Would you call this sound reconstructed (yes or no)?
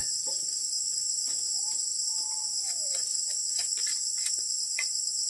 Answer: yes